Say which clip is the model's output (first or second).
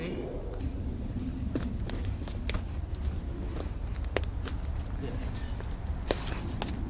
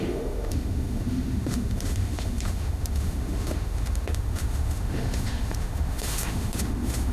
second